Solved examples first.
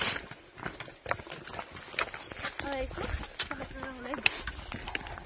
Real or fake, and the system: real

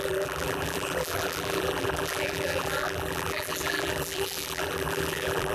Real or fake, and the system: fake, vocoder, BigVGAN v2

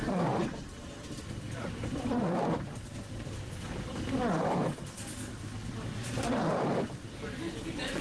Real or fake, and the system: fake, vocoder, BigVGAN v2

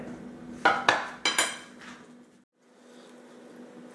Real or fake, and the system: real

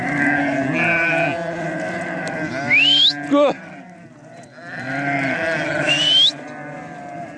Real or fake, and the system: real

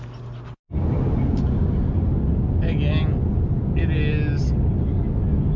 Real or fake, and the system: real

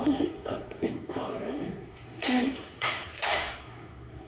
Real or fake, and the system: fake, codec, SNAC